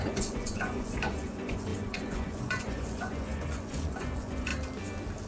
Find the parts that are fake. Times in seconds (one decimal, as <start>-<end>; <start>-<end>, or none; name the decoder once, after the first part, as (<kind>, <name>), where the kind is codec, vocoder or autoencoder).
0.0-4.5 (vocoder, Vocos)